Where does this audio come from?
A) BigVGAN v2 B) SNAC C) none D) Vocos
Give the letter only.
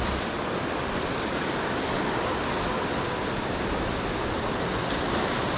C